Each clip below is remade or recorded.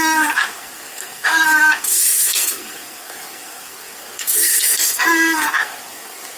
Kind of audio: remade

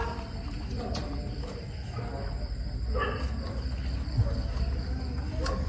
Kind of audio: recorded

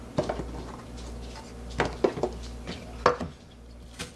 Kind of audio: recorded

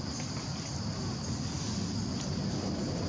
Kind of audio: recorded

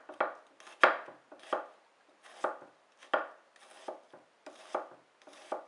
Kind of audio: recorded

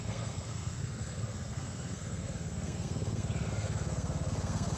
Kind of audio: remade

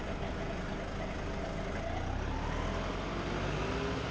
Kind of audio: recorded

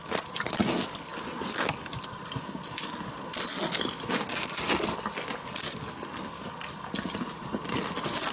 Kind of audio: recorded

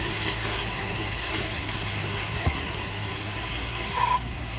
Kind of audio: remade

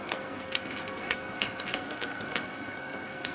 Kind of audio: remade